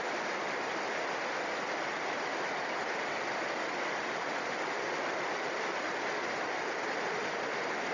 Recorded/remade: recorded